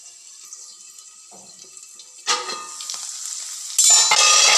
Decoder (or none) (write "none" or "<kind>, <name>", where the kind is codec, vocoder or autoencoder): none